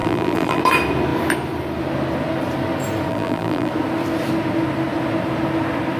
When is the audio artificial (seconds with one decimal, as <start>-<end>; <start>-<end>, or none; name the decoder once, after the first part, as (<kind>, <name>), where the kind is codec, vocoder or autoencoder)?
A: 0.0-0.6 (vocoder, BigVGAN v2); 3.1-3.7

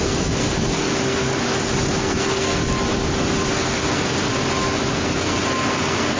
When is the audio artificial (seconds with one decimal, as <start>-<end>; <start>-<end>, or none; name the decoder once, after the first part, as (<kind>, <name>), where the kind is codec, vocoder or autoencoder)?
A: 0.0-1.3 (codec, SNAC); 2.0-2.6; 3.5-4.3; 4.9-6.2

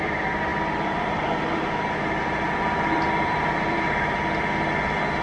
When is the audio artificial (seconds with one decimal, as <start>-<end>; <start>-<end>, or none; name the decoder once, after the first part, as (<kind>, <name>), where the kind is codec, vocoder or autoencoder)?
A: 0.0-5.2 (vocoder, BigVGAN v2)

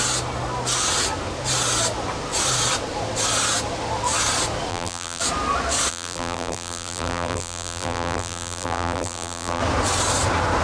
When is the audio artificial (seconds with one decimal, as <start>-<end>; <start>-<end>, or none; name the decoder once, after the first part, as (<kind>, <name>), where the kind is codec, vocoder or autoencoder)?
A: 4.7-5.2 (vocoder, BigVGAN v2); 5.9-9.6

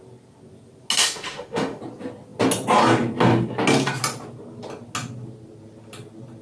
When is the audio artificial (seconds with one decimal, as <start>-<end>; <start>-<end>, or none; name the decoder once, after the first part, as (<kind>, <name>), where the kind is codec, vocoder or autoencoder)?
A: 1.0-1.8 (autoencoder, DAC-VAE)

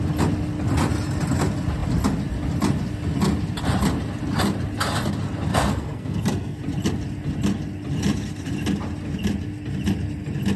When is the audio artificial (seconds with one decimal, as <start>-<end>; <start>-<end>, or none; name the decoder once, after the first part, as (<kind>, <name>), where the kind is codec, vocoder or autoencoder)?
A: 5.5-6.6 (codec, SNAC)

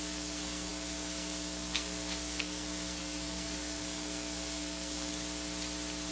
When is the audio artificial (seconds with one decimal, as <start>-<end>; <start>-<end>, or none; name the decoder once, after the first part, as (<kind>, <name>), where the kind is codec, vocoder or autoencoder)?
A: 0.0-5.1 (codec, SNAC)